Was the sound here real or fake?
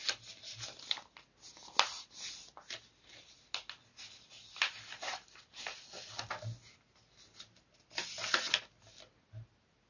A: real